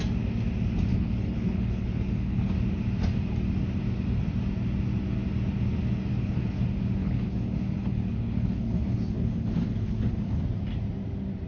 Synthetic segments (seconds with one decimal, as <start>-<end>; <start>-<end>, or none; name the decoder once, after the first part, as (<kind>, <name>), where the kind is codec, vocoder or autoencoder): 0.9-2.5 (codec, HILCodec); 6.1-6.6; 7.0-10.4